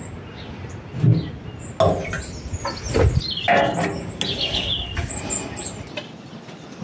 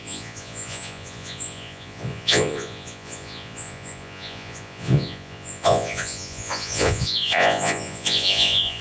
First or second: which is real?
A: first